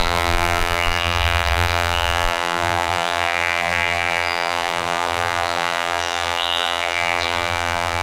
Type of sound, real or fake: fake